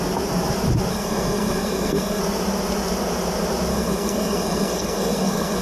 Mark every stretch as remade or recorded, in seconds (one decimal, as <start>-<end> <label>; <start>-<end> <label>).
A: 0.0-0.9 recorded; 0.9-2.2 remade; 2.2-3.7 recorded; 3.7-5.6 remade